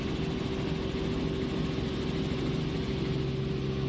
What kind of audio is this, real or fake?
real